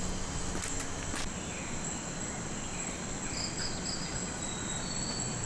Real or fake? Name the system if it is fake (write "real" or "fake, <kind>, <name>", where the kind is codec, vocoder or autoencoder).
real